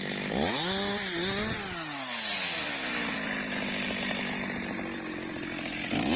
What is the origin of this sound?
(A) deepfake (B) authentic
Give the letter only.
B